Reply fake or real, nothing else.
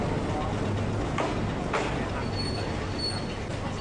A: real